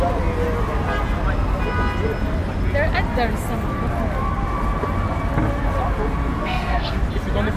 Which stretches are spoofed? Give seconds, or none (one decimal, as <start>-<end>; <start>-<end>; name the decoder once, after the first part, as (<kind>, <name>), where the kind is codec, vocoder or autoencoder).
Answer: 6.3-7.0 (codec, SNAC)